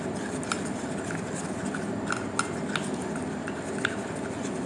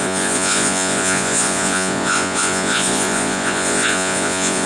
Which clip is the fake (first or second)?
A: second